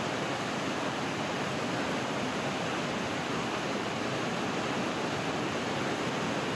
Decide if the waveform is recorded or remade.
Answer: recorded